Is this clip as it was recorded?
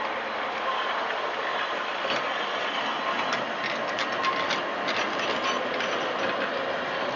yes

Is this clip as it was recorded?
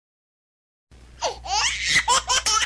yes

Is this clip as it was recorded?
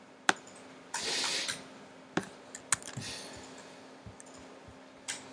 yes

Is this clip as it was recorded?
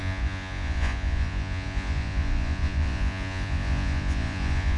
no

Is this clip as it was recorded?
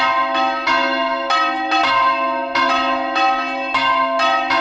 yes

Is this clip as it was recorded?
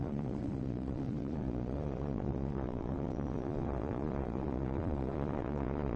no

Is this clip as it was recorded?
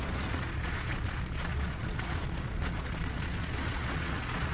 no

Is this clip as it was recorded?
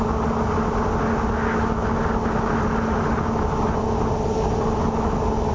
yes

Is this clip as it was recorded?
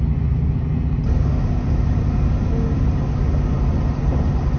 yes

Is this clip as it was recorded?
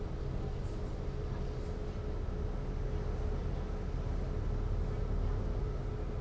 yes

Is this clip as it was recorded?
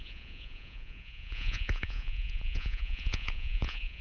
no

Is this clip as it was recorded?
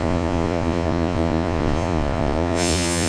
no